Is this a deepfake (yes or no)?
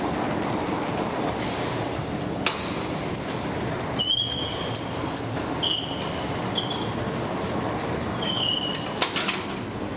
no